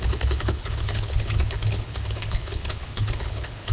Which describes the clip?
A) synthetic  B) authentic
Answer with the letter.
A